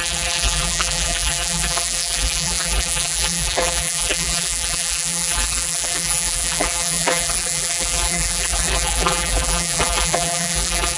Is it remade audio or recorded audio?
remade